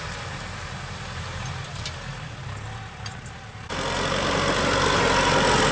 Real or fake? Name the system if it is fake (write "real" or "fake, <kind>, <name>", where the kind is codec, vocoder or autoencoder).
real